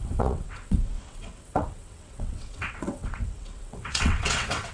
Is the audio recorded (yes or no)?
no